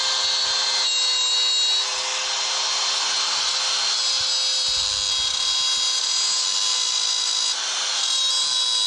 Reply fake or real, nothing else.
real